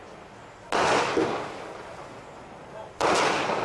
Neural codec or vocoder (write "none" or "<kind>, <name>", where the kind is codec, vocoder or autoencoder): none